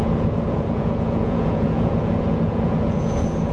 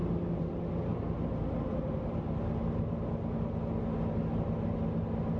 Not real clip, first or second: first